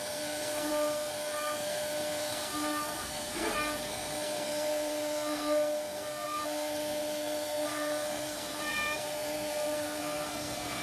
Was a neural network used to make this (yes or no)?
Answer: yes